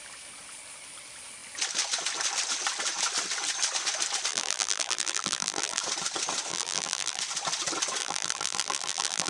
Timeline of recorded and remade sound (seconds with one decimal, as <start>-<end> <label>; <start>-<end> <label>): 0.0-4.3 recorded; 4.3-5.8 remade; 5.8-6.5 recorded; 6.5-7.2 remade; 7.2-8.0 recorded; 8.0-9.3 remade